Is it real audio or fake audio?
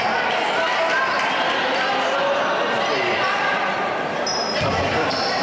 fake